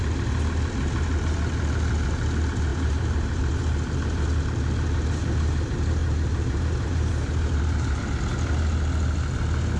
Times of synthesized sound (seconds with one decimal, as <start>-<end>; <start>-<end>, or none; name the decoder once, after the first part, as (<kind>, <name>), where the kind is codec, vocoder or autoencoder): 2.7-3.6 (vocoder, BigVGAN v2); 6.0-8.0